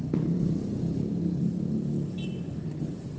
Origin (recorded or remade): recorded